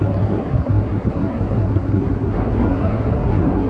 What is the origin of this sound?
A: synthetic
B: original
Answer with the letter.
A